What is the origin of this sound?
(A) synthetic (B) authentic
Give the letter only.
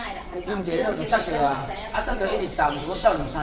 A